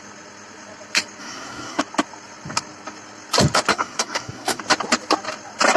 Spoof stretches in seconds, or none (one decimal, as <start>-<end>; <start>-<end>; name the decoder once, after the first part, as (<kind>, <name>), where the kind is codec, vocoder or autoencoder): 1.2-1.8 (codec, SNAC); 3.7-4.6